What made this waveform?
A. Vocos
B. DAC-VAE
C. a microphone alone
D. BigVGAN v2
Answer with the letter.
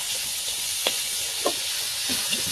A